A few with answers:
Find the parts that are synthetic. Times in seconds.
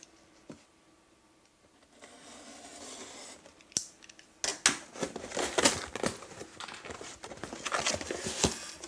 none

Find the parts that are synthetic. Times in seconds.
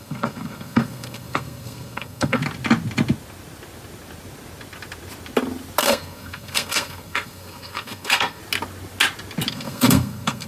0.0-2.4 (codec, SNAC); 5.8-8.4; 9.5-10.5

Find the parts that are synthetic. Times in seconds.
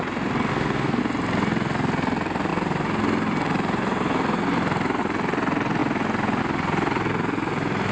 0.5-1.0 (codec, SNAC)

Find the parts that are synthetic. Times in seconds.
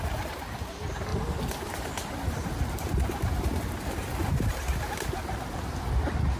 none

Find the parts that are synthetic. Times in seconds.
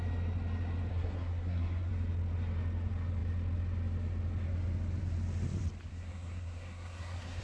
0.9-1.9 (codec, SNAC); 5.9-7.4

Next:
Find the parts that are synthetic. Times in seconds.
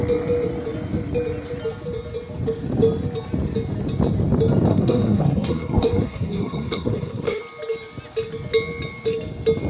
4.7-7.4 (codec, SNAC)